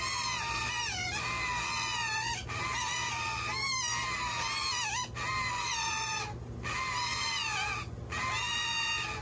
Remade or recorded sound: recorded